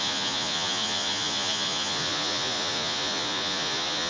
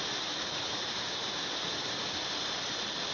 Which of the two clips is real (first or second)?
second